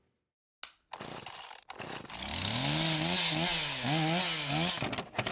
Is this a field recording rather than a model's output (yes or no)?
yes